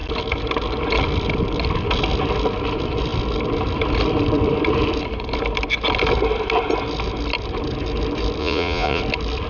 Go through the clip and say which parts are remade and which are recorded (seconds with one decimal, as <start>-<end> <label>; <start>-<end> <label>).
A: 0.0-8.4 recorded; 8.4-9.0 remade; 9.0-9.5 recorded